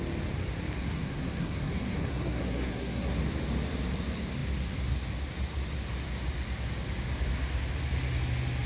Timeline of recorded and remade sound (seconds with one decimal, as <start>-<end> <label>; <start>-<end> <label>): 0.0-0.8 recorded; 0.8-3.2 remade; 3.2-8.7 recorded